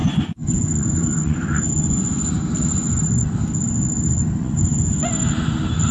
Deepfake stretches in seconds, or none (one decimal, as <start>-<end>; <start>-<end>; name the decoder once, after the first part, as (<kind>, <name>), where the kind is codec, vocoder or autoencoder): 0.0-2.3 (vocoder, Vocos); 4.4-5.1